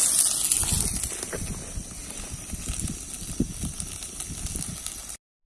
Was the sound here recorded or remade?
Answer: recorded